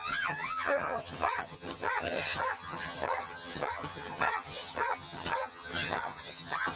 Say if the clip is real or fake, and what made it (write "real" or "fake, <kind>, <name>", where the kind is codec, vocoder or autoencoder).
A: fake, vocoder, HiFi-GAN